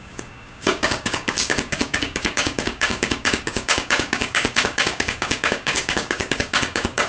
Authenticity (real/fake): fake